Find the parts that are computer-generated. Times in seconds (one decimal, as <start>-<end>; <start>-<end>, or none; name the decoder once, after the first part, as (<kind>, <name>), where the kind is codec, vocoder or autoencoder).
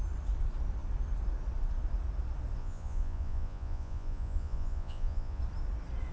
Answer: 2.6-5.4 (vocoder, Vocos)